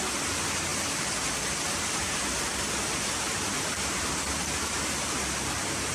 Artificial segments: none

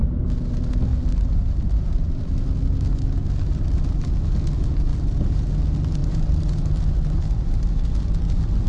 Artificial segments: 4.9-5.5 (vocoder, BigVGAN v2); 6.0-7.8

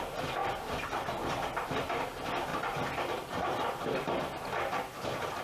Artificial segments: 0.4-1.8 (vocoder, BigVGAN v2); 2.5-3.3